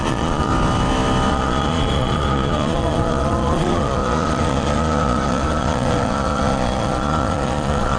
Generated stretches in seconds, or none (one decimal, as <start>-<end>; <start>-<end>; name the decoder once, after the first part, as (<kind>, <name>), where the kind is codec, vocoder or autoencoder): 0.0-0.5 (vocoder, Vocos); 1.3-8.0